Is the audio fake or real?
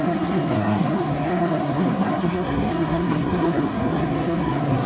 fake